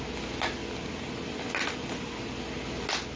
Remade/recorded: recorded